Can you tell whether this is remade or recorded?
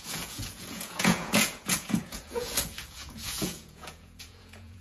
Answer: remade